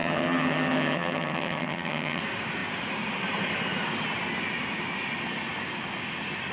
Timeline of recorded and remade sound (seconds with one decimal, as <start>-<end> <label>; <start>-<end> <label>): 0.0-2.2 remade; 2.2-6.5 recorded